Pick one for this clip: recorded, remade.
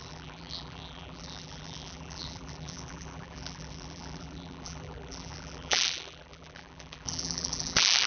remade